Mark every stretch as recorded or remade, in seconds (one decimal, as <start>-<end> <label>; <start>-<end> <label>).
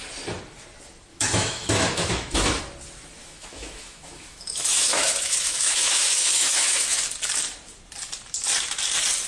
0.0-1.1 recorded; 1.1-2.6 remade; 2.6-3.2 recorded; 3.2-7.0 remade; 7.0-9.3 recorded